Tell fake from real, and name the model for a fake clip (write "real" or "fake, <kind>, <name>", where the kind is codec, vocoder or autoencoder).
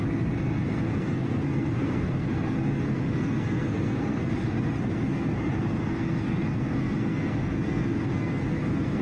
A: fake, codec, SNAC